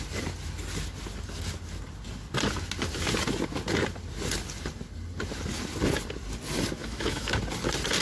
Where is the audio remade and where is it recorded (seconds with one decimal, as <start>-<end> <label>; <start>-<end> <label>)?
0.0-6.8 recorded; 6.8-7.3 remade; 7.3-8.0 recorded